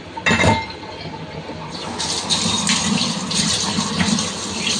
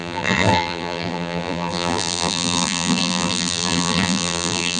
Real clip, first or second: first